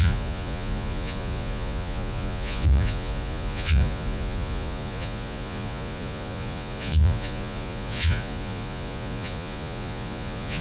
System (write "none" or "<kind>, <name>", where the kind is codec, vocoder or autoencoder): vocoder, Vocos